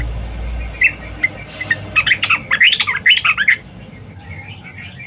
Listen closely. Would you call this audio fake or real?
real